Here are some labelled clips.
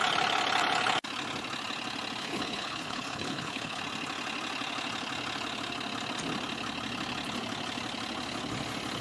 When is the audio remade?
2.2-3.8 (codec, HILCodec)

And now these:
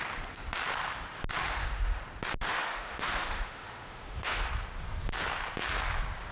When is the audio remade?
1.4-2.0 (autoencoder, DAC-VAE); 2.5-4.5

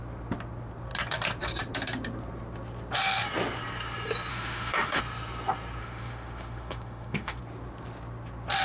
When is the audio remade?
4.3-5.0 (autoencoder, DAC-VAE); 5.8-7.4

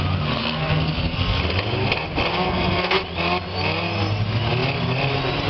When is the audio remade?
0.4-1.4 (codec, SNAC); 2.3-3.0

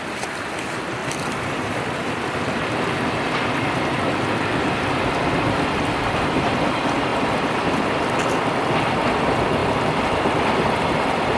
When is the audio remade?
1.0-5.8 (vocoder, BigVGAN v2); 9.6-11.4

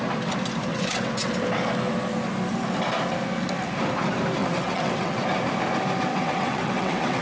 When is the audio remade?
0.7-1.3 (vocoder, WaveNeXt); 4.4-5.2; 6.1-7.2